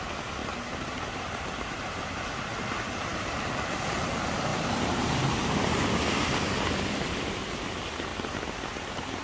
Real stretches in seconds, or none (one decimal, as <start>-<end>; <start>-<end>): 0.0-0.4; 2.4-4.5; 5.2-8.1